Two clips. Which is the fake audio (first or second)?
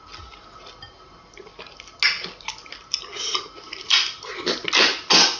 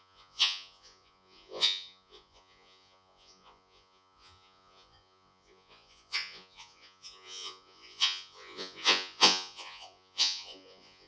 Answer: second